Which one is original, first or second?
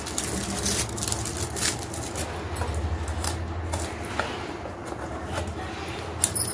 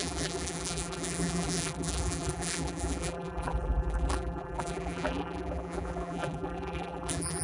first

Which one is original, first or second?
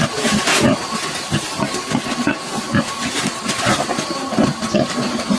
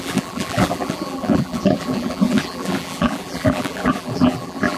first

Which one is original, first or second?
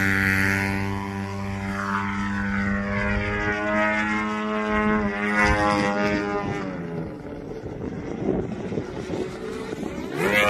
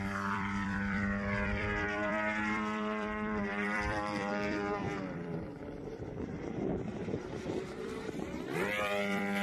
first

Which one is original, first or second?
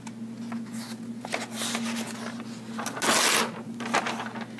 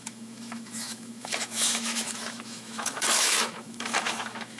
first